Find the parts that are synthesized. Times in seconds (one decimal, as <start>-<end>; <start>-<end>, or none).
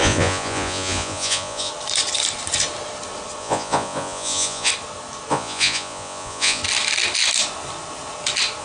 0.0-1.7; 3.4-4.7; 5.3-6.6